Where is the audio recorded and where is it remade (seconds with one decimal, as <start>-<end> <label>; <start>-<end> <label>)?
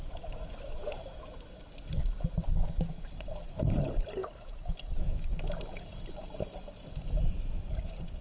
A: 0.0-1.6 remade; 1.6-2.5 recorded; 2.5-3.1 remade; 3.1-4.2 recorded; 4.2-5.5 remade; 5.5-8.2 recorded